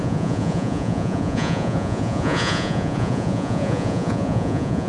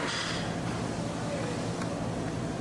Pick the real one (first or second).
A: second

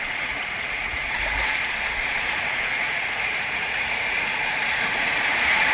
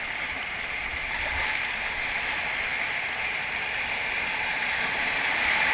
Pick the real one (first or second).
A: second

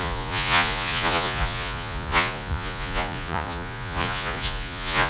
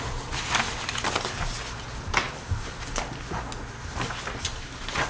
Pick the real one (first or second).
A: second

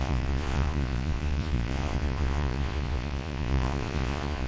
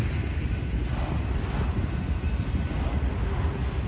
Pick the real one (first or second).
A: second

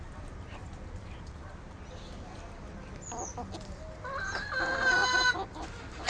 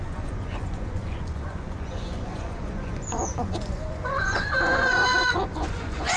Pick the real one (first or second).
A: first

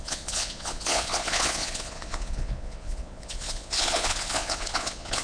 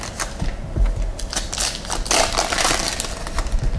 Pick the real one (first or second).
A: second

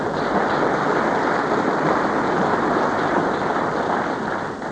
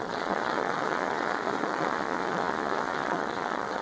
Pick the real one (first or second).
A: first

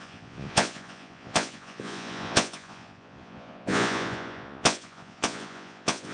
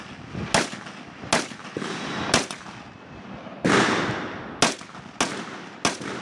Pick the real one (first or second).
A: second